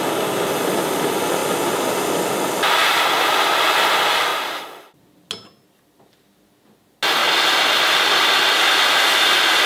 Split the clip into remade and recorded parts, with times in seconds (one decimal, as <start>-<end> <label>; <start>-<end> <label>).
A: 0.0-4.3 recorded; 4.3-5.0 remade; 5.0-9.7 recorded